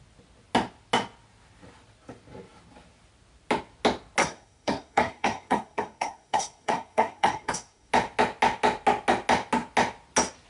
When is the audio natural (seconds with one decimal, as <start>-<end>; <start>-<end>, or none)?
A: 0.0-4.2; 7.9-10.5